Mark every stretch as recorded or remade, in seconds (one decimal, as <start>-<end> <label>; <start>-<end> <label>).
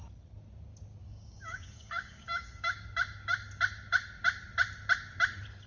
0.0-1.0 recorded; 1.0-2.9 remade; 2.9-5.7 recorded